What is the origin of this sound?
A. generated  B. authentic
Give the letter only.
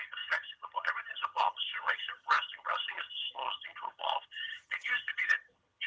A